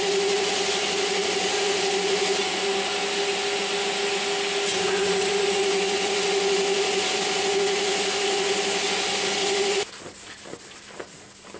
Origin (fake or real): real